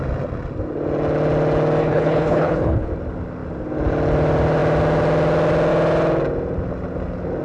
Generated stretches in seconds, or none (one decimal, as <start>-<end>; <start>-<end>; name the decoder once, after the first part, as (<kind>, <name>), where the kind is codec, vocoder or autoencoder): 1.8-2.9 (codec, HILCodec)